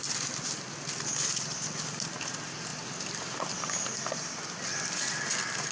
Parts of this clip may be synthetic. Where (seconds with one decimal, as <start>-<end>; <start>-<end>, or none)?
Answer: none